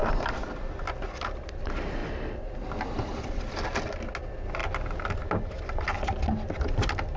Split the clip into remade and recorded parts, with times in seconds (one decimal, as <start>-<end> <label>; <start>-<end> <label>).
0.0-7.2 recorded